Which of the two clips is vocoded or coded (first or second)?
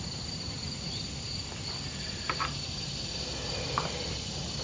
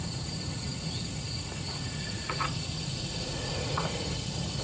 second